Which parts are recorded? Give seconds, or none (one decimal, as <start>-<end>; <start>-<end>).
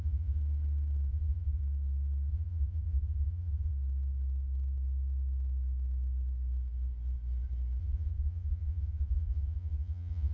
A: 0.4-1.1; 1.6-2.3; 3.7-7.8